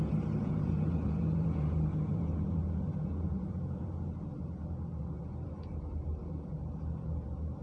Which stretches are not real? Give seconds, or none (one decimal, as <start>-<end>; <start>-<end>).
0.4-4.1